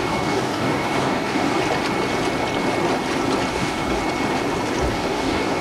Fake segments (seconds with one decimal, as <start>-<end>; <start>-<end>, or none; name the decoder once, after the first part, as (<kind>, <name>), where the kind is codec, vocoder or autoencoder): 0.0-1.6 (codec, DAC); 3.5-4.0; 4.9-5.6

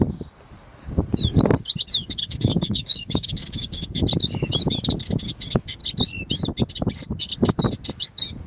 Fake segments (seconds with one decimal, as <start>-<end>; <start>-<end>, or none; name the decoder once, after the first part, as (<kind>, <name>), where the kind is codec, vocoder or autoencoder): 2.0-4.0 (codec, DAC)

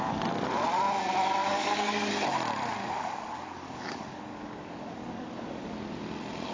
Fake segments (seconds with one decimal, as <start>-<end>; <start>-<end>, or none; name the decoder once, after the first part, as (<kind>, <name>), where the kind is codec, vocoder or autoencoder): 1.4-2.1 (codec, DAC); 2.8-5.7

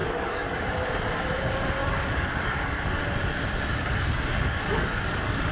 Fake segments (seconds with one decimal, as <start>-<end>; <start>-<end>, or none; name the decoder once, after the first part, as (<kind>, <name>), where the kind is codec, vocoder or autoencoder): 0.0-0.6 (codec, DAC); 1.8-3.0; 3.7-5.5

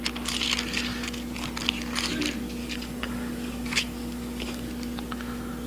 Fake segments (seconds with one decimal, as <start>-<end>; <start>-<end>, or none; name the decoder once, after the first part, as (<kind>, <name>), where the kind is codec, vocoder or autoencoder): 2.6-4.7 (codec, DAC)

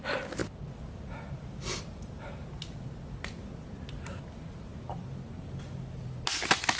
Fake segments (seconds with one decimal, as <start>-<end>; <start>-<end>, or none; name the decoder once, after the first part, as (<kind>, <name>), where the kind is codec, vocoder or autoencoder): none